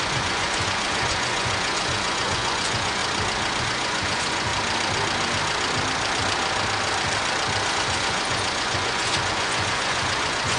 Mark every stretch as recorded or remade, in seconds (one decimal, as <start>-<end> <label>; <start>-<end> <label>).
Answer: 0.0-3.0 remade; 3.0-3.6 recorded; 3.6-4.5 remade; 4.5-7.7 recorded; 7.7-10.6 remade